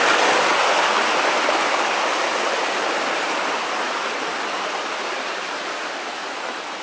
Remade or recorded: recorded